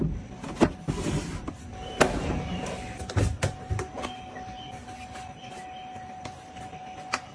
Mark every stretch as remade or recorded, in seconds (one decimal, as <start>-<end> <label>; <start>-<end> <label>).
0.0-7.3 recorded